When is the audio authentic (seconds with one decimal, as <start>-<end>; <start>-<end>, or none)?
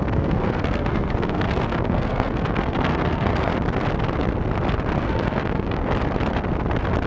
3.5-5.0; 5.8-7.1